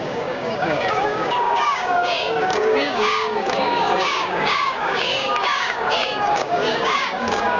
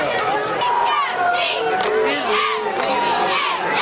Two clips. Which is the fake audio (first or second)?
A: first